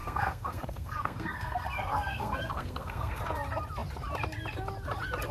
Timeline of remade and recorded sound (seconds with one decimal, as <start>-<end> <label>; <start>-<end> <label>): 0.0-3.2 remade; 3.2-5.3 recorded